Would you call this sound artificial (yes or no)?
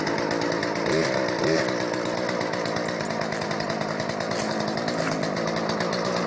no